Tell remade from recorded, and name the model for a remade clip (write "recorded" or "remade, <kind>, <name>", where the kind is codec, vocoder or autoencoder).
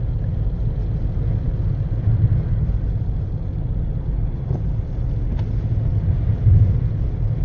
recorded